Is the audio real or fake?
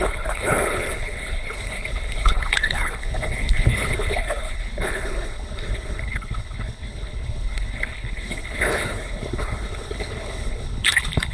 fake